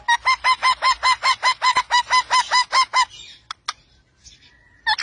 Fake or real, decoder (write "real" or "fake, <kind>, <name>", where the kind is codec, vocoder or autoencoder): real